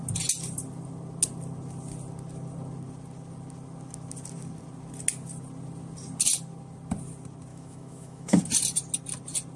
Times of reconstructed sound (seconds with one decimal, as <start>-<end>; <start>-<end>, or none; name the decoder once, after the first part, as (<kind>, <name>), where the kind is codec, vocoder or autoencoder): 7.5-8.4 (autoencoder, DAC-VAE)

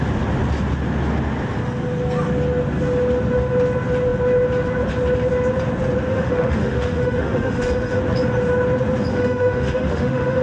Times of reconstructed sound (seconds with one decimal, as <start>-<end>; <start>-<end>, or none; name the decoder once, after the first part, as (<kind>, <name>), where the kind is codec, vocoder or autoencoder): 6.1-8.0 (autoencoder, DAC-VAE); 9.1-10.4